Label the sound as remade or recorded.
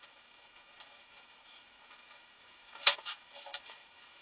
remade